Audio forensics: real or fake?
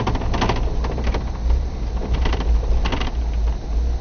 real